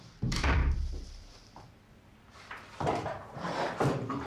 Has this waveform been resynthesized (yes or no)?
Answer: yes